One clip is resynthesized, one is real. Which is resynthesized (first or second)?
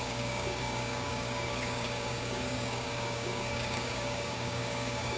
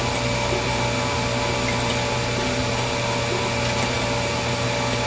first